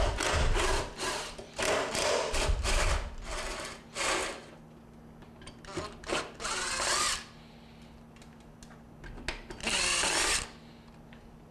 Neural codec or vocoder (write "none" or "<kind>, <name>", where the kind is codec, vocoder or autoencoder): none